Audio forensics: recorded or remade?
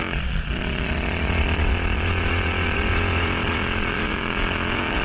remade